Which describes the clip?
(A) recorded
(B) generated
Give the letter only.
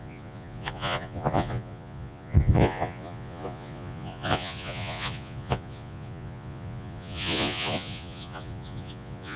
B